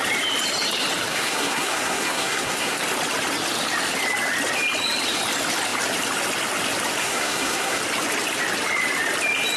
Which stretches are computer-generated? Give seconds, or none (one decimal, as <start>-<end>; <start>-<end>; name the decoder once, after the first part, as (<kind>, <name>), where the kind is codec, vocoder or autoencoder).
1.1-2.8 (codec, SNAC); 7.0-7.8